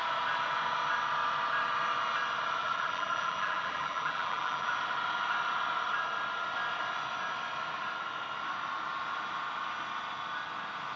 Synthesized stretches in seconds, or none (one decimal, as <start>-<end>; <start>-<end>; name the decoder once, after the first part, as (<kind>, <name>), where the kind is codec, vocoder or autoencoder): 2.6-4.7 (vocoder, BigVGAN v2)